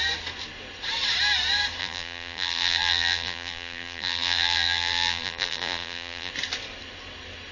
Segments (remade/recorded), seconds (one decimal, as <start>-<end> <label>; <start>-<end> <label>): 0.0-1.8 recorded; 1.8-6.3 remade; 6.3-7.5 recorded